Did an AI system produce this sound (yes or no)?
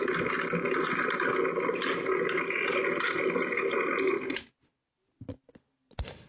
no